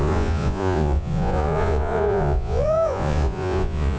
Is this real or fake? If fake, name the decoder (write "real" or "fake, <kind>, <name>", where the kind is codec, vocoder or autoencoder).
fake, vocoder, Vocos